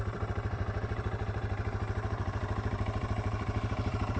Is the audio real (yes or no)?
no